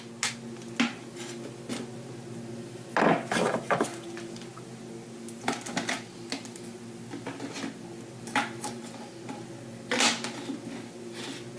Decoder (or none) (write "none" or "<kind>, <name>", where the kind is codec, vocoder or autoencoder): none